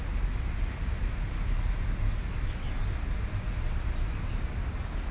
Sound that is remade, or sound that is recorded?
recorded